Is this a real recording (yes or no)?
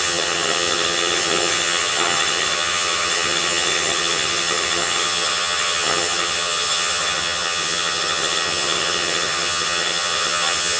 no